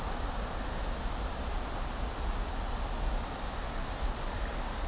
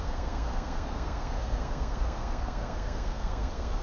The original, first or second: first